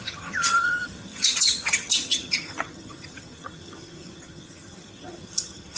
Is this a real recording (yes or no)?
no